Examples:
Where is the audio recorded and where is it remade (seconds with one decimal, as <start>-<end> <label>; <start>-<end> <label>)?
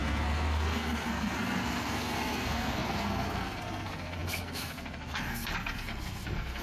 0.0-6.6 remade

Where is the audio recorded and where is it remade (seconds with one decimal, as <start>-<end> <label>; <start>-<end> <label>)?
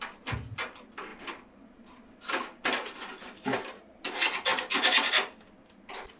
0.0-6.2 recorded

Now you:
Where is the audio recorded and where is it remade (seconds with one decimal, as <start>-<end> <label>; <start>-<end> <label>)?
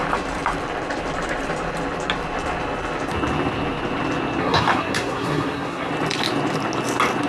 0.0-4.4 recorded; 4.4-5.9 remade; 5.9-7.3 recorded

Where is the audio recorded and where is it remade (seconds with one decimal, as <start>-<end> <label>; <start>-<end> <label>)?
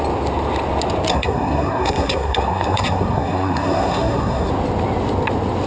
0.0-1.1 recorded; 1.1-4.5 remade; 4.5-5.7 recorded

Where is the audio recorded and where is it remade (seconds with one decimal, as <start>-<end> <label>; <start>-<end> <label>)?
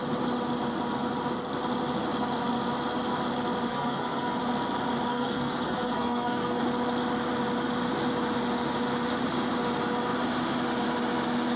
0.0-3.7 recorded; 3.7-4.4 remade; 4.4-5.1 recorded; 5.1-6.6 remade; 6.6-11.6 recorded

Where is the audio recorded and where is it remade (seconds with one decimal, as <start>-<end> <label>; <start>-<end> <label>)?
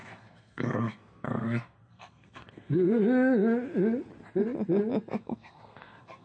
0.0-3.0 remade; 3.0-5.2 recorded; 5.2-6.2 remade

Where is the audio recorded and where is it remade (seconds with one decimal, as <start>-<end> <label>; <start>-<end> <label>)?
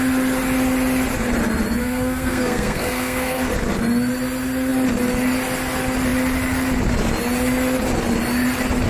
0.0-1.8 recorded; 1.8-3.5 remade; 3.5-8.9 recorded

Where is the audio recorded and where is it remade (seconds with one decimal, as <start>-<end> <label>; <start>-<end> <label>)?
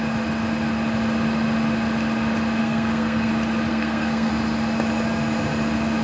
0.0-2.6 recorded; 2.6-3.3 remade; 3.3-3.7 recorded; 3.7-4.3 remade; 4.3-6.0 recorded